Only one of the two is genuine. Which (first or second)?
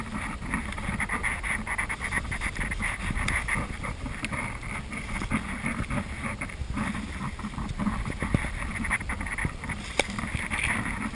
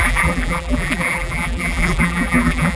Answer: first